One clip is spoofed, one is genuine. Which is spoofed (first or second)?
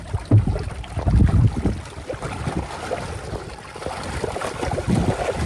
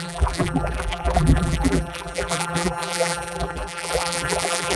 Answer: second